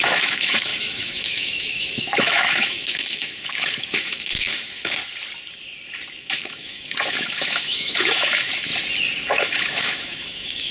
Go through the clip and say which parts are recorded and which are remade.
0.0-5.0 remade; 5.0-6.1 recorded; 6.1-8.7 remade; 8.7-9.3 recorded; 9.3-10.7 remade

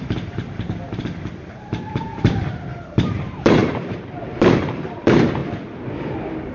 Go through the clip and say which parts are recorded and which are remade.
0.0-5.4 remade; 5.4-6.5 recorded

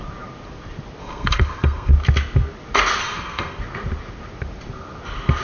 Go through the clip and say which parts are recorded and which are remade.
0.0-1.0 recorded; 1.0-1.9 remade; 1.9-3.0 recorded; 3.0-3.6 remade; 3.6-5.4 recorded

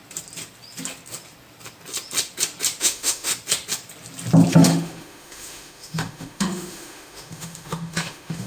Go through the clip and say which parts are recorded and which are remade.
0.0-2.8 recorded; 2.8-3.3 remade; 3.3-4.5 recorded; 4.5-8.5 remade